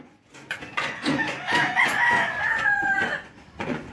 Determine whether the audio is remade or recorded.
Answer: remade